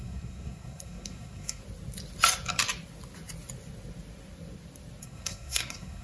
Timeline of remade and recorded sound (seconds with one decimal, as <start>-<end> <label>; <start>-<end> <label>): 0.0-1.6 remade; 1.6-5.0 recorded; 5.0-6.0 remade